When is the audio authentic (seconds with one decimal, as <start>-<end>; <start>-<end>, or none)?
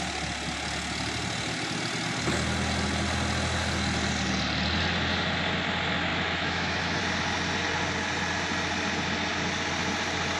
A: 0.0-6.1; 7.0-10.4